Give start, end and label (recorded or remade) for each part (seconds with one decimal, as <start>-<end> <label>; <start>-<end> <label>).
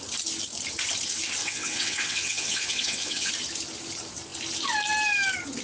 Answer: 0.0-1.4 recorded; 1.4-3.3 remade; 3.3-5.6 recorded